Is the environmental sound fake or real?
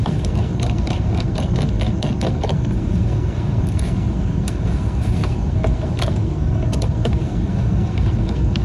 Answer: fake